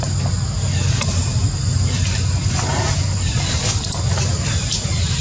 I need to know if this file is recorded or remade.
recorded